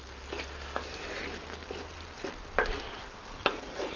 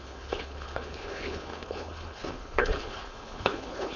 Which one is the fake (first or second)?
second